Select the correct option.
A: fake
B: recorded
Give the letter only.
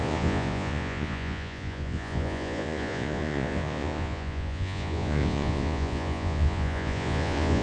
A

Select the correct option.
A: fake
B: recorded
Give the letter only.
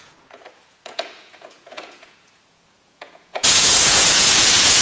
A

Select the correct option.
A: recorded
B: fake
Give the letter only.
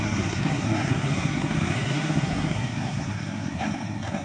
B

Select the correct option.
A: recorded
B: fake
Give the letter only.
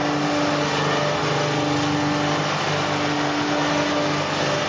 A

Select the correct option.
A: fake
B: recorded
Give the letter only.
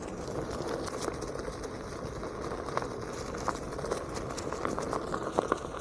B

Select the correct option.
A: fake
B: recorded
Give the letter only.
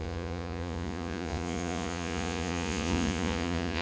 A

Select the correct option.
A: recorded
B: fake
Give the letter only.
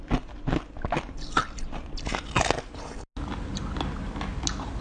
A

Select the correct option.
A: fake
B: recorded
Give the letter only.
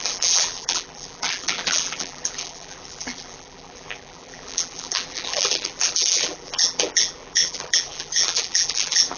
A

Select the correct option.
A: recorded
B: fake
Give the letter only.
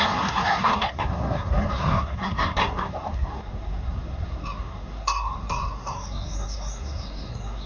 B